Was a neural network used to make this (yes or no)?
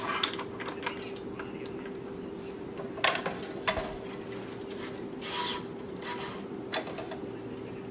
no